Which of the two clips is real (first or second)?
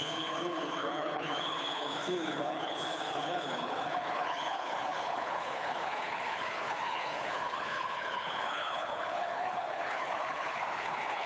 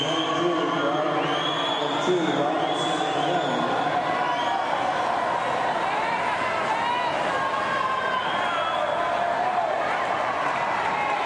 second